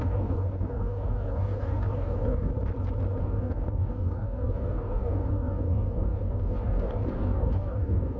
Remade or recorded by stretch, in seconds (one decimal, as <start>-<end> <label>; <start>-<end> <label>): 0.0-2.5 remade; 2.5-3.2 recorded; 3.2-8.2 remade